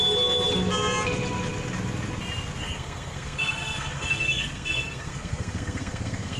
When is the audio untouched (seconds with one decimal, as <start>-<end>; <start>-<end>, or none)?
0.0-2.6